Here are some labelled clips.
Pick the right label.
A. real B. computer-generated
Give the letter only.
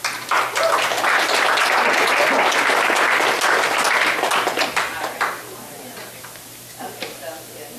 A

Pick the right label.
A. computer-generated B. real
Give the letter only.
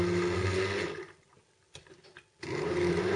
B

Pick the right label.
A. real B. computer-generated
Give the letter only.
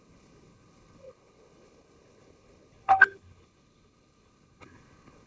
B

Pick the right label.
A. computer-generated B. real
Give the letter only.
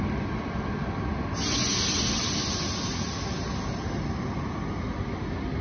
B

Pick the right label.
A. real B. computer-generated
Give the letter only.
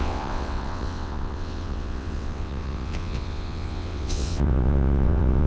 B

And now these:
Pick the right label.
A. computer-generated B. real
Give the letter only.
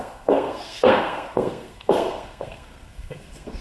A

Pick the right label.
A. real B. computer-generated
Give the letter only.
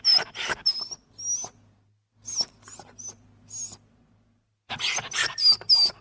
A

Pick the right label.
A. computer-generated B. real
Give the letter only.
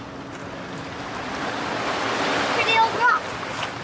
B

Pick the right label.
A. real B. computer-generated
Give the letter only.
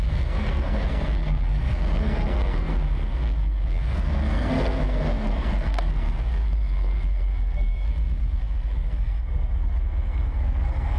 B